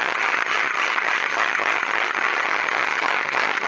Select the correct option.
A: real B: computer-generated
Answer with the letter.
B